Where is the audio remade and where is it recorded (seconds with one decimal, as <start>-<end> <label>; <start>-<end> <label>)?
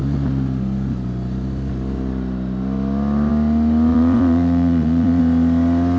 0.0-3.9 recorded; 3.9-5.2 remade; 5.2-6.0 recorded